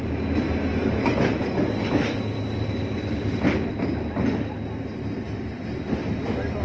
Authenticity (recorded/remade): recorded